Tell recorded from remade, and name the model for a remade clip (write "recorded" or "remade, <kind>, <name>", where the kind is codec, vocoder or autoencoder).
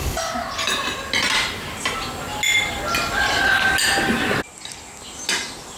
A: recorded